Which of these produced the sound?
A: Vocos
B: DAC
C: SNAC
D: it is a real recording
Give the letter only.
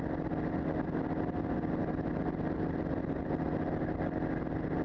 D